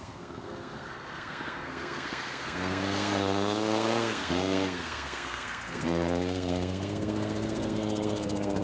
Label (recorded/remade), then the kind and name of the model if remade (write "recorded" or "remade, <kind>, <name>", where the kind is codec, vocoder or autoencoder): remade, codec, SNAC